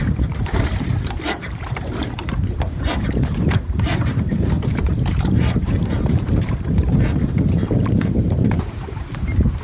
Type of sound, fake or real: fake